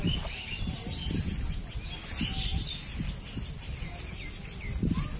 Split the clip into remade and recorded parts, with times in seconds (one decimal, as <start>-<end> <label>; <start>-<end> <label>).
0.0-5.2 recorded